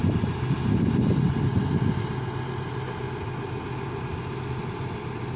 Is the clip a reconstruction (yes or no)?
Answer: no